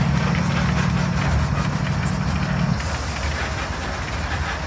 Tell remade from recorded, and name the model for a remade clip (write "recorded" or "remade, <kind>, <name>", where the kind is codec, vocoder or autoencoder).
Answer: recorded